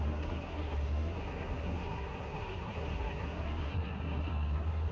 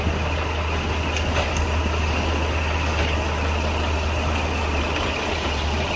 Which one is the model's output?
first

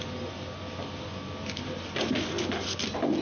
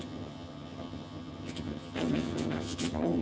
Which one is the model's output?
second